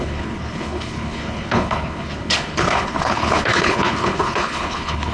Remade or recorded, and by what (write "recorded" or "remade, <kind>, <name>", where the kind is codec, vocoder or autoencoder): remade, codec, HILCodec